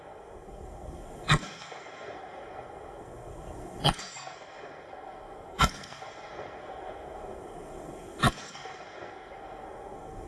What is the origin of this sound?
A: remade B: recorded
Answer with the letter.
A